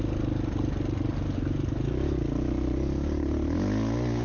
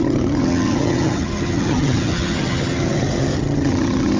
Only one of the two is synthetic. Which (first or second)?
second